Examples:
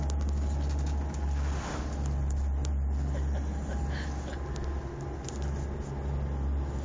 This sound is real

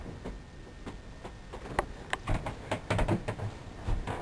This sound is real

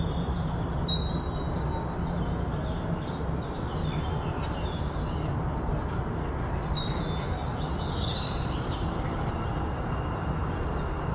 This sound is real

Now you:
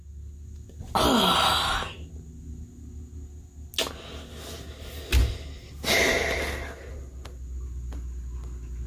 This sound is real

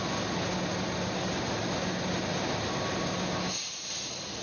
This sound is real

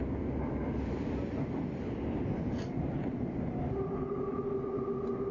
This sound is real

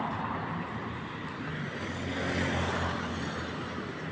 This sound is real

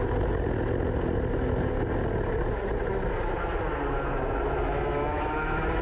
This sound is real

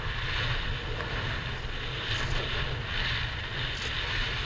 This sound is real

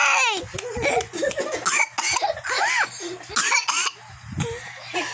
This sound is real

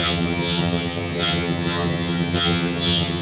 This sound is fake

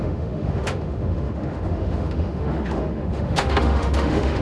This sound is fake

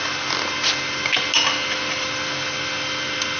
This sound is real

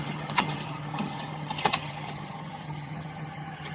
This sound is fake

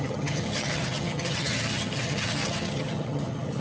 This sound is fake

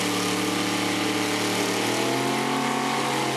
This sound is real